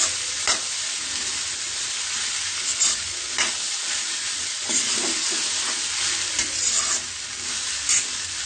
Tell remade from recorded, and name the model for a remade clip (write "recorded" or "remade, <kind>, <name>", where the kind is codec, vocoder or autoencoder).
recorded